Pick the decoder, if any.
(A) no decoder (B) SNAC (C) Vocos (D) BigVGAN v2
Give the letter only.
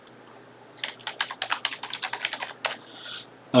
A